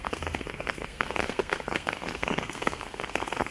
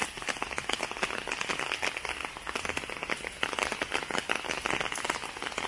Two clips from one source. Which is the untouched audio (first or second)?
second